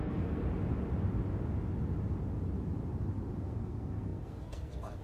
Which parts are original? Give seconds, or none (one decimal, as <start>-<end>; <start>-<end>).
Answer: 0.4-3.4